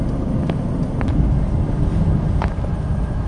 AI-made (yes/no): no